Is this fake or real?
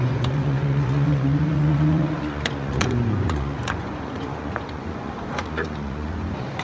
fake